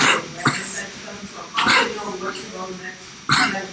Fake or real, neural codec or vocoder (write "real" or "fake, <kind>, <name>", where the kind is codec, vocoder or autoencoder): real